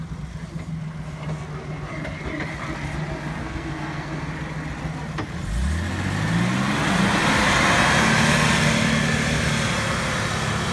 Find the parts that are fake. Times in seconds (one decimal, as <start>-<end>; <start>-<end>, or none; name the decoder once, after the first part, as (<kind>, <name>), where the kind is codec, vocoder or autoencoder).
3.4-4.3 (codec, SNAC)